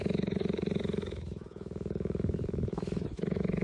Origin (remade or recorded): remade